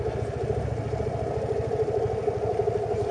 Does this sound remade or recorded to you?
recorded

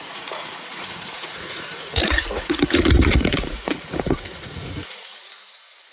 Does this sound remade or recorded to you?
remade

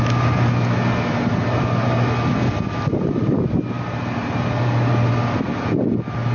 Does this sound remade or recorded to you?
recorded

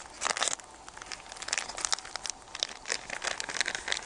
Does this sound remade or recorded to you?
recorded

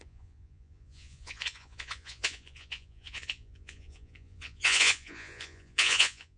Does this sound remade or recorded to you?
remade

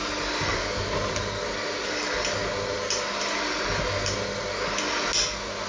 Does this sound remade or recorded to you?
recorded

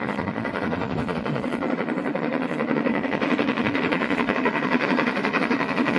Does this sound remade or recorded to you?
remade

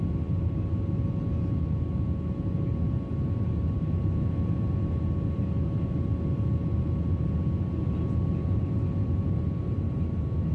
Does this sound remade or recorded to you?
recorded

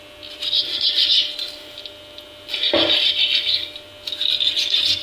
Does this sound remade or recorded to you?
recorded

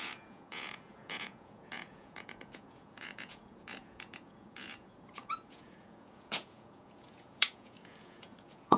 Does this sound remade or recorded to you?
remade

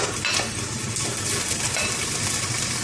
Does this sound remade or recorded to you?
recorded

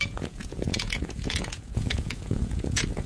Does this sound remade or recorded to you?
remade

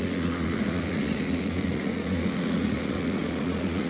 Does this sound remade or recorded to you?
remade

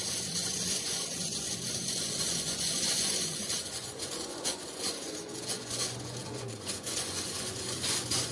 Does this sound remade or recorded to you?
remade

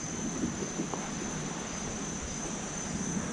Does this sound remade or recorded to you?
recorded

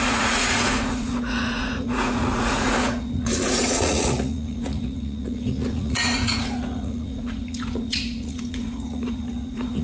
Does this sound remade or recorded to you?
remade